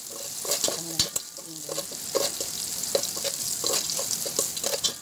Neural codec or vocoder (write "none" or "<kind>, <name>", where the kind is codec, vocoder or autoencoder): none